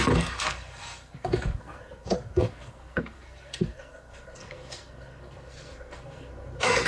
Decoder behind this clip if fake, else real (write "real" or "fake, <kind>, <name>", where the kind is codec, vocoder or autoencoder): fake, codec, SNAC